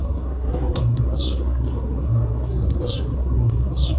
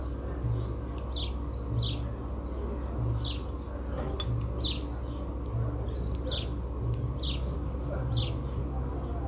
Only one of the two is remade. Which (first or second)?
first